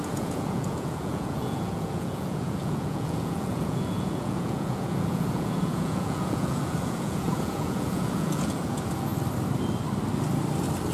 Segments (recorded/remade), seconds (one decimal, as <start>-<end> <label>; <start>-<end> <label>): 0.0-9.1 remade; 9.1-10.9 recorded